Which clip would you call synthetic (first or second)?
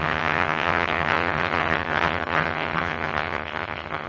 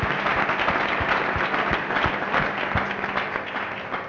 first